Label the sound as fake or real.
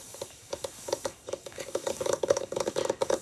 fake